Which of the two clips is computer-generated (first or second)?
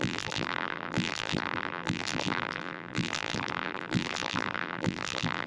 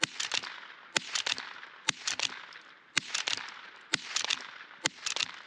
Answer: first